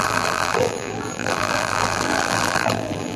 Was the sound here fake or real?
fake